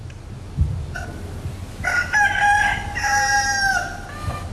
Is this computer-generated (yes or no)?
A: no